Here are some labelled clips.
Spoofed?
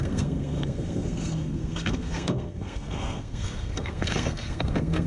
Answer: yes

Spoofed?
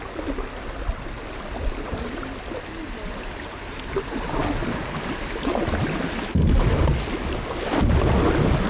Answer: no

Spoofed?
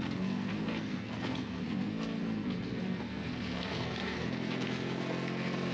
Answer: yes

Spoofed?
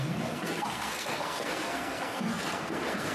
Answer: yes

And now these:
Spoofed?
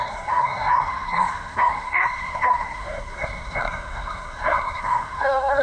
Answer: yes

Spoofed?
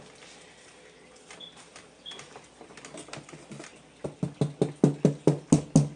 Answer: no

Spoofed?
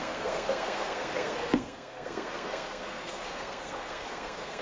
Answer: yes